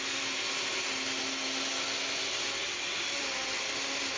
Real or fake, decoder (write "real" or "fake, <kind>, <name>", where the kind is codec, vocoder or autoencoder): real